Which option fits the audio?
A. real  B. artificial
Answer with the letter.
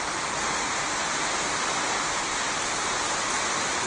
B